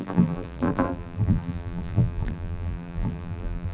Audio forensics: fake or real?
fake